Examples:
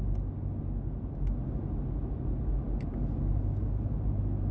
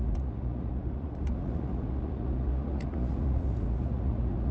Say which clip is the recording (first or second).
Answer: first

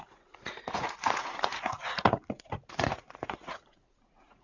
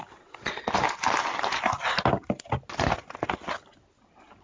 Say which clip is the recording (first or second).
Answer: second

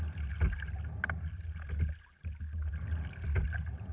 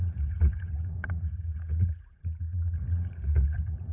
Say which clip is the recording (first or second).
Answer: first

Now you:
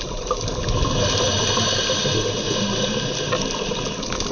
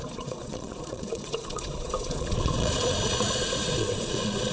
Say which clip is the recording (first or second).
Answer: first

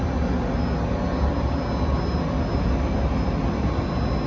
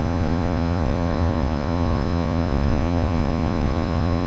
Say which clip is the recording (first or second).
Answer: first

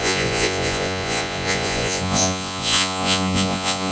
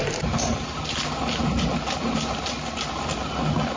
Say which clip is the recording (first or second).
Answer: second